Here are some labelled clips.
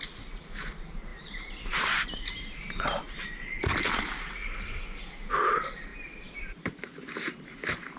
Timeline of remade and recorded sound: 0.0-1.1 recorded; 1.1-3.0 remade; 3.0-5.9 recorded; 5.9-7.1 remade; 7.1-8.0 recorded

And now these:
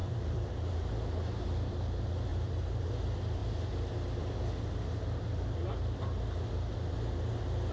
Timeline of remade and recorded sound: 0.0-0.9 remade; 0.9-2.3 recorded; 2.3-2.9 remade; 2.9-7.7 recorded

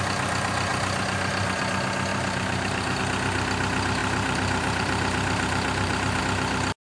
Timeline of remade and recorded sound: 0.0-2.1 recorded; 2.1-3.0 remade; 3.0-4.0 recorded; 4.0-6.2 remade; 6.2-6.8 recorded

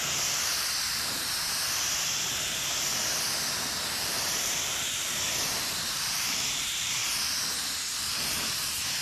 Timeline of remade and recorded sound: 0.0-2.9 remade; 2.9-3.6 recorded; 3.6-7.0 remade; 7.0-7.9 recorded; 7.9-9.0 remade